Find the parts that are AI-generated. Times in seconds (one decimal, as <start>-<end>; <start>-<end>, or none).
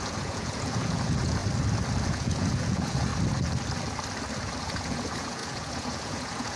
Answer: 0.0-1.4; 2.1-3.1; 4.6-6.6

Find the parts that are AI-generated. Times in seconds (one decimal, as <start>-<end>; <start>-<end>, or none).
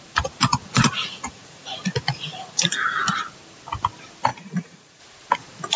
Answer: 0.6-3.1; 4.3-5.0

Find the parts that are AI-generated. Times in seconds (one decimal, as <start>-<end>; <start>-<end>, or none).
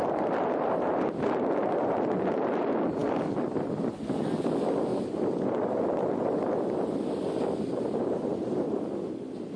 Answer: none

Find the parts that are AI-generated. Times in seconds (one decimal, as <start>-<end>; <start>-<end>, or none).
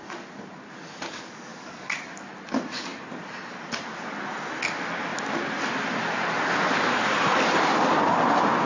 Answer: 1.5-2.3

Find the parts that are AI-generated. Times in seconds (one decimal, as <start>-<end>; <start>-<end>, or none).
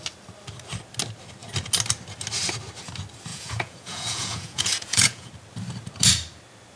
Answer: 3.3-5.3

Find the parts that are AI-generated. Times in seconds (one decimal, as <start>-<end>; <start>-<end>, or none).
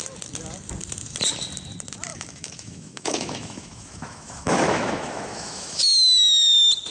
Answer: 2.1-5.8